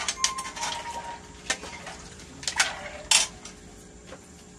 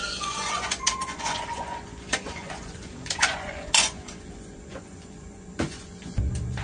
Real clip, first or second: first